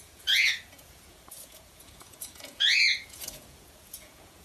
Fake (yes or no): yes